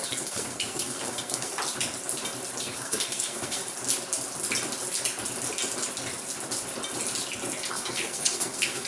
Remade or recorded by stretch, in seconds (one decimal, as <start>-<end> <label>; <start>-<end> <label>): 0.0-1.5 remade; 1.5-2.6 recorded; 2.6-3.6 remade; 3.6-7.7 recorded; 7.7-8.9 remade